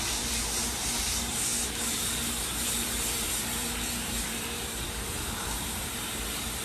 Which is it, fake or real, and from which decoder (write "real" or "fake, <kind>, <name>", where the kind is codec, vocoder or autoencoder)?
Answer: fake, vocoder, BigVGAN v2